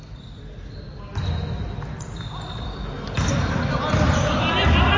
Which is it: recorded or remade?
recorded